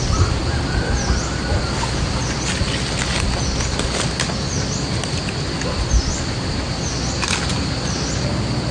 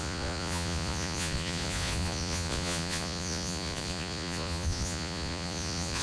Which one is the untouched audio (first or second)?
first